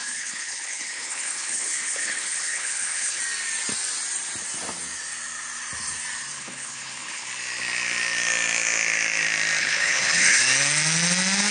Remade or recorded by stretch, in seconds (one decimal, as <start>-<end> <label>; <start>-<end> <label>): 0.0-3.2 remade; 3.2-6.3 recorded; 6.3-7.3 remade; 7.3-9.6 recorded; 9.6-10.4 remade; 10.4-11.5 recorded